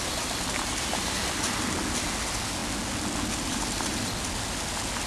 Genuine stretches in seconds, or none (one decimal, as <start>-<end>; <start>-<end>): 0.0-5.1